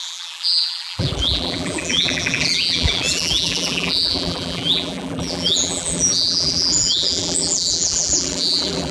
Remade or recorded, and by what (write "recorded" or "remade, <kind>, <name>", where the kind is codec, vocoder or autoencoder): remade, vocoder, BigVGAN v2